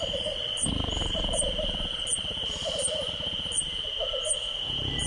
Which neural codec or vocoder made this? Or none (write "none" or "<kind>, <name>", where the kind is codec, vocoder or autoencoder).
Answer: none